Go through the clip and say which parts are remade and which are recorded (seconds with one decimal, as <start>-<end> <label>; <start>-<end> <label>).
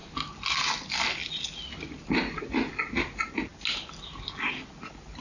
0.0-5.2 recorded